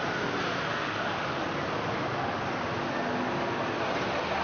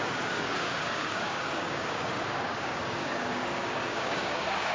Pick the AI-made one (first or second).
second